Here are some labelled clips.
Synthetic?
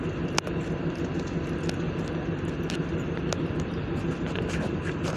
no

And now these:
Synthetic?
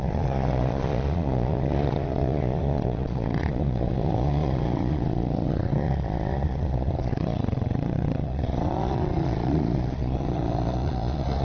yes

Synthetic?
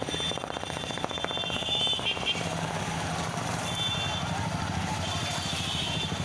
yes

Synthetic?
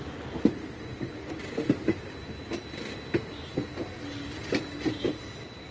no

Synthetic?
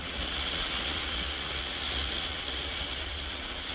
yes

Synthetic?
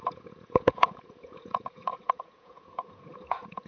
yes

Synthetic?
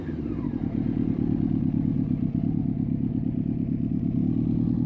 no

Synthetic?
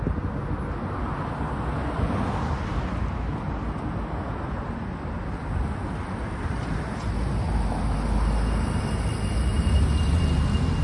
no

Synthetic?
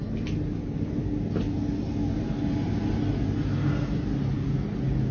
no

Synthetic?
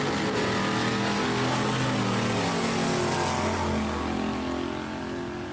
no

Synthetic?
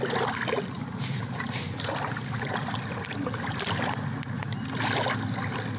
no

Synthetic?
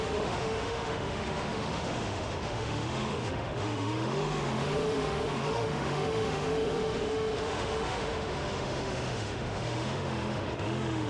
yes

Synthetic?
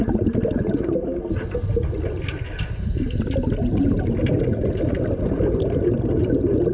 no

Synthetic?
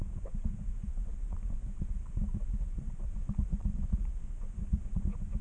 yes